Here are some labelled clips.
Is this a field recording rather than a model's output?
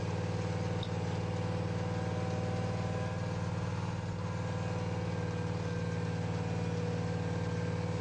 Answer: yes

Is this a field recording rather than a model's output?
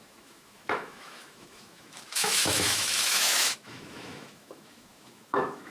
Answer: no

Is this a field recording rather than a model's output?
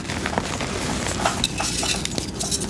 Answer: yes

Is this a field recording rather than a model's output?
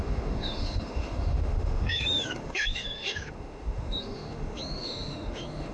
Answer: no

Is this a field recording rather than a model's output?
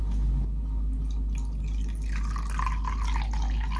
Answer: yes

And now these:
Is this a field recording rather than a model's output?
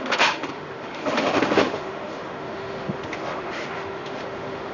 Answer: no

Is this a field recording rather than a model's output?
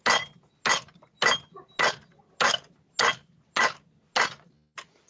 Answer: yes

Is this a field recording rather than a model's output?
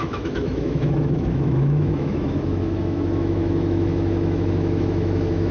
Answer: no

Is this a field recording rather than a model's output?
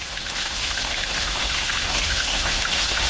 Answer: no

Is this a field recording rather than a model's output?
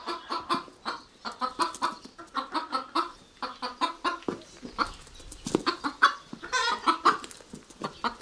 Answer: yes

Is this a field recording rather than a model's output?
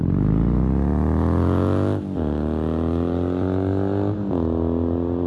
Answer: yes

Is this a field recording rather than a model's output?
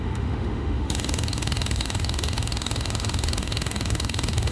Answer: no